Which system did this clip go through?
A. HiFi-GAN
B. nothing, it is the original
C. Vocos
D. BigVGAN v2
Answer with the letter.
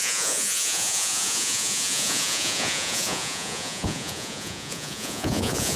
C